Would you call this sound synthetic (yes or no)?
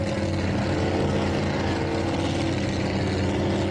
no